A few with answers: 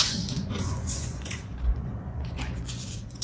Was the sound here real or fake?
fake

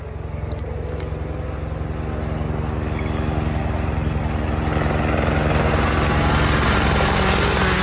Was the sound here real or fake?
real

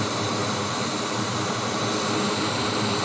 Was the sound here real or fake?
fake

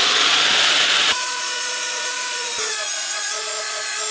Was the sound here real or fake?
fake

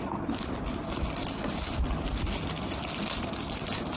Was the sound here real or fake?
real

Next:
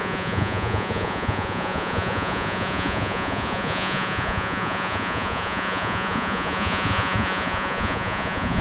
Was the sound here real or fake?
fake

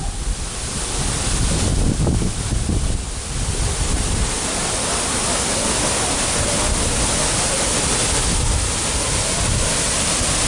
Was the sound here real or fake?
real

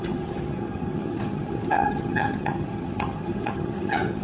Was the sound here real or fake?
fake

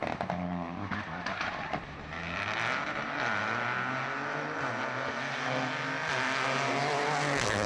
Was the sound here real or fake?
real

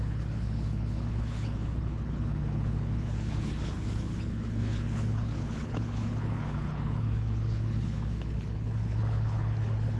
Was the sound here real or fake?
fake